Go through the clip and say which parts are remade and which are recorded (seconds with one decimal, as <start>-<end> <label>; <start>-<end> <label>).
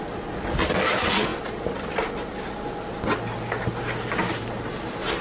0.0-5.2 recorded